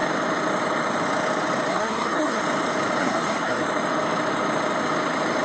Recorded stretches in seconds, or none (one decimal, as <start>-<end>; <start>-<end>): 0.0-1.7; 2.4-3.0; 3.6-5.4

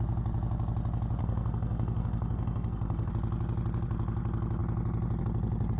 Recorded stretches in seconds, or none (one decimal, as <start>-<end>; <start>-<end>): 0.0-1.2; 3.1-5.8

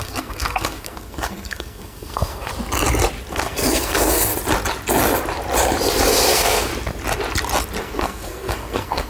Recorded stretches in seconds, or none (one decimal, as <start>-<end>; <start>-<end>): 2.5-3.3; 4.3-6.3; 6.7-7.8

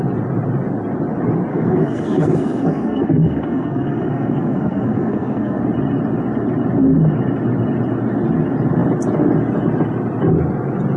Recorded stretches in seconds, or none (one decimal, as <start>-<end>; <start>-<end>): 0.0-1.5; 5.6-11.0